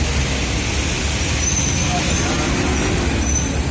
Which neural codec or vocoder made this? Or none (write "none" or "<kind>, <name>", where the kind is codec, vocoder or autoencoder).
none